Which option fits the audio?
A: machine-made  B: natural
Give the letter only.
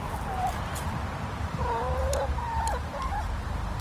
A